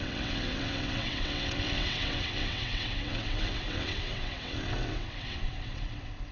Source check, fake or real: fake